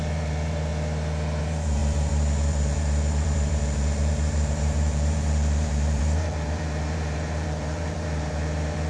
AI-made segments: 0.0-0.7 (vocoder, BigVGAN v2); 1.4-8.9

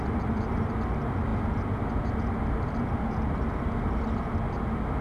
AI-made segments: 1.3-4.3 (vocoder, BigVGAN v2)

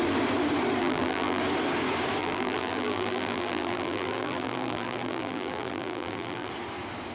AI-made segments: 0.8-1.4 (vocoder, BigVGAN v2); 2.2-6.5

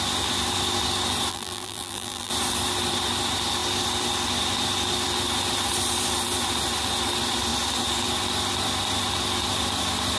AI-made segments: 1.3-2.3 (vocoder, BigVGAN v2)

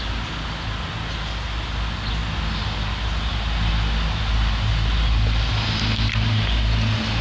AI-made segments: none

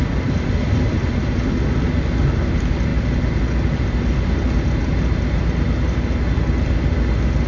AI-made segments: none